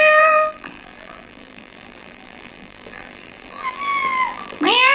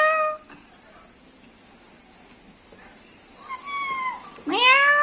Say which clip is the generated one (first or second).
first